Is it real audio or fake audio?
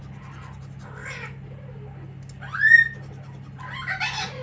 real